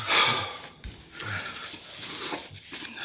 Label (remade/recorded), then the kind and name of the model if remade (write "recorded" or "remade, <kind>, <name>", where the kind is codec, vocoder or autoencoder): remade, vocoder, BigVGAN v2